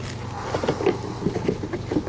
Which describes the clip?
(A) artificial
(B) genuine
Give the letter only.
B